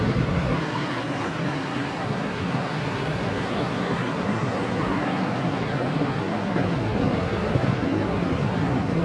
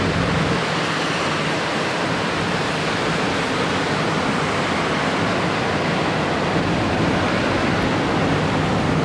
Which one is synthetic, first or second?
first